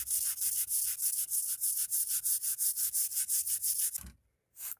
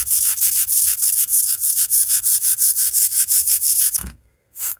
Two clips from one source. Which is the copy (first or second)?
second